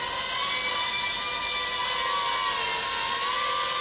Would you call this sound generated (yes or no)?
no